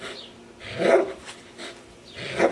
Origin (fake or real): real